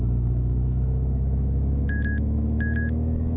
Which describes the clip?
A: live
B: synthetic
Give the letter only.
B